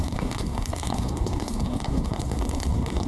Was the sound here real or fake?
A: fake